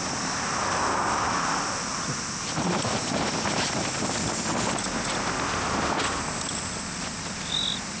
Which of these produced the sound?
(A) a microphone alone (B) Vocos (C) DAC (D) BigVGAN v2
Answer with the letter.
A